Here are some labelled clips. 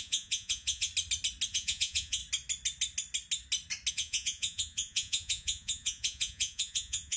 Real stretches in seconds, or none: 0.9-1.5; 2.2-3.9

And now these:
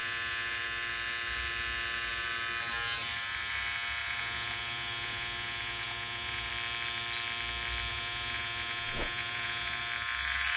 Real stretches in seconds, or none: 0.0-4.0; 6.5-7.9; 9.8-10.6

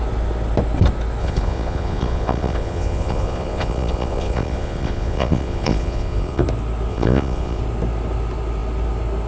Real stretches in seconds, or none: 0.0-1.2; 6.4-6.9; 7.6-9.3